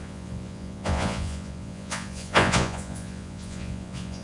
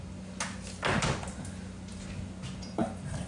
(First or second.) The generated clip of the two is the first